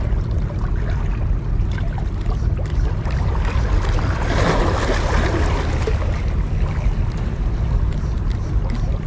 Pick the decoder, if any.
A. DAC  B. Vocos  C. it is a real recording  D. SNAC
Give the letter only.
C